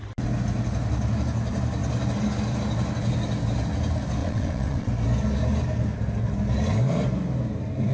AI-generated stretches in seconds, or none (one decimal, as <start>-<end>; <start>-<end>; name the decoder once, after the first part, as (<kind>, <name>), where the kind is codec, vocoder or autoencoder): 4.2-4.9 (vocoder, WaveNeXt)